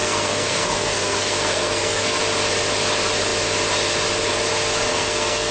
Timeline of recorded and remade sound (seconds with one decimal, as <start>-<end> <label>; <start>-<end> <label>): 0.0-2.2 remade; 2.2-4.9 recorded; 4.9-5.5 remade